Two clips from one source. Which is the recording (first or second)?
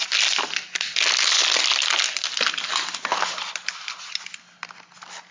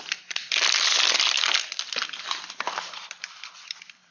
first